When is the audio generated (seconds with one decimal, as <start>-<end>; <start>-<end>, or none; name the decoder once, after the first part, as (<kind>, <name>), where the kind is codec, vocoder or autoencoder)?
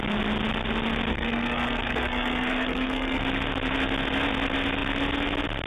1.1-3.2 (codec, SNAC)